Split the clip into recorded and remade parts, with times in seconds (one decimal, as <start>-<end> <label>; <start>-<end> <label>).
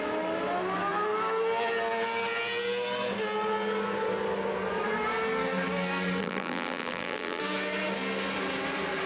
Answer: 0.0-6.2 recorded; 6.2-7.4 remade; 7.4-9.1 recorded